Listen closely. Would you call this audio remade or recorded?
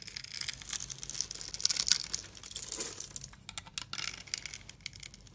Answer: recorded